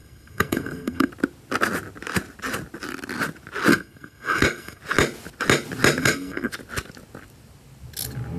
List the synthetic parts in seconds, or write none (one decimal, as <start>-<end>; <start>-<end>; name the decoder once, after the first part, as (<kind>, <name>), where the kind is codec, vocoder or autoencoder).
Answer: 0.0-1.1 (codec, SNAC); 3.7-4.8; 6.0-6.5